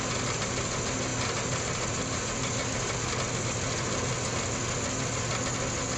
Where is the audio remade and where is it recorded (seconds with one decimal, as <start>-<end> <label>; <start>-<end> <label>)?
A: 0.0-6.0 recorded